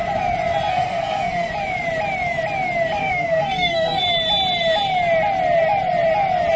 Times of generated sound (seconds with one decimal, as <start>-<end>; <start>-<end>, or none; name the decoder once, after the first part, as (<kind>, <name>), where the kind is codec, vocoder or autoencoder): 0.7-1.5 (codec, SNAC); 3.0-4.0

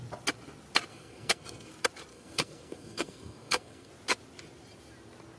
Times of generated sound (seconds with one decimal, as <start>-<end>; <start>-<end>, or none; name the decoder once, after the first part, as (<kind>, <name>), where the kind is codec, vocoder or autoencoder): 0.9-1.7 (codec, SNAC); 2.1-3.9

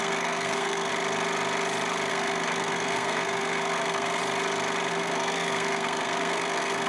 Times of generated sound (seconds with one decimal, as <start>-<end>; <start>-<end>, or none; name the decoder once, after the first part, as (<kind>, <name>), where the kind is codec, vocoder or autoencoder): 0.0-0.9 (codec, SNAC); 2.1-4.2; 4.9-6.9

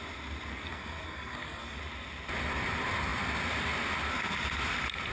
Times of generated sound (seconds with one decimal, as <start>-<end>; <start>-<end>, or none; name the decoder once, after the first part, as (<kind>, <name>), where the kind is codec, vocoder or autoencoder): 0.5-1.8 (codec, SNAC)